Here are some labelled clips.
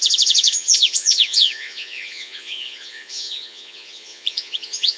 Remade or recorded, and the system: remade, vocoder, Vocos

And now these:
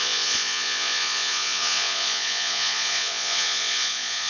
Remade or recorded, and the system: remade, vocoder, Vocos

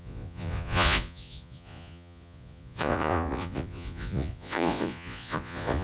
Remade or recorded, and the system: remade, vocoder, Vocos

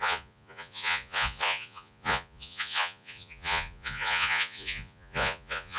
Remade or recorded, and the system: remade, vocoder, Vocos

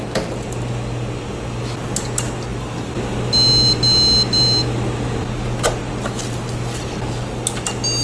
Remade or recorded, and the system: recorded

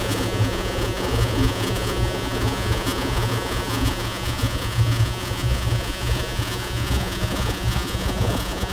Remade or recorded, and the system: remade, vocoder, Vocos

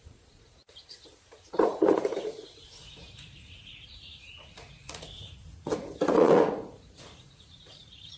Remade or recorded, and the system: remade, vocoder, Vocos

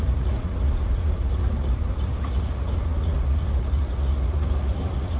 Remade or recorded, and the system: remade, vocoder, Vocos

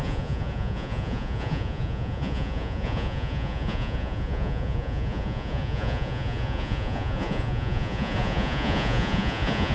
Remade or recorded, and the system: remade, vocoder, Vocos